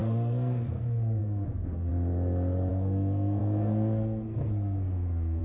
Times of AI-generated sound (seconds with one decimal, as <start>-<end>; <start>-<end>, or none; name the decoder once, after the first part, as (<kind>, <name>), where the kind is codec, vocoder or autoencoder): 0.0-1.9 (codec, SNAC); 2.7-5.4